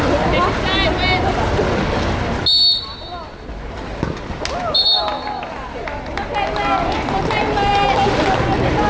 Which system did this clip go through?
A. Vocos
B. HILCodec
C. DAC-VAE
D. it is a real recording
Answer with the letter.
D